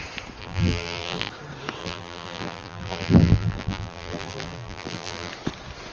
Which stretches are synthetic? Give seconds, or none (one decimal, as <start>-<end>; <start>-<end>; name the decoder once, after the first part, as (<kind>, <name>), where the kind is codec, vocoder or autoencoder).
0.4-1.3 (vocoder, BigVGAN v2); 1.8-5.3